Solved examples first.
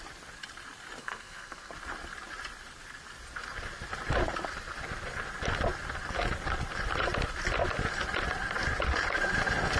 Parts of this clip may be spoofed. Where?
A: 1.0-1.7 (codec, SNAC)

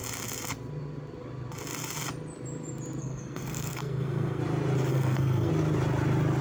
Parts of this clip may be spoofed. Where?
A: 3.0-4.4 (codec, SNAC); 4.9-5.5

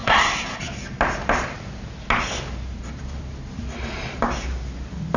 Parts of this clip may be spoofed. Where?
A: 0.0-0.6 (codec, SNAC)

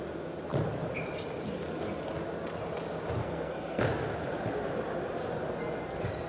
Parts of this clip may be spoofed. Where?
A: 3.2-3.8 (codec, SNAC)

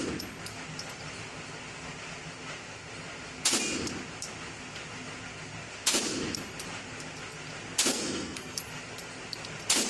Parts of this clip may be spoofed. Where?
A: 7.9-8.6 (codec, SNAC)